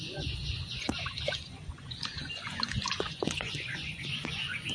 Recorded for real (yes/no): no